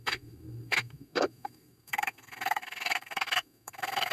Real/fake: fake